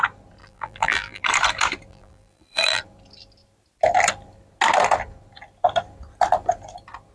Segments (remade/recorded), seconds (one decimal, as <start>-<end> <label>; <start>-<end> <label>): 0.0-0.4 recorded; 0.4-1.2 remade; 1.2-1.9 recorded; 1.9-2.8 remade; 2.8-7.1 recorded